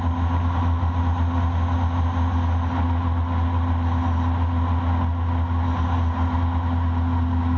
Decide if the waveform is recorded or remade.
recorded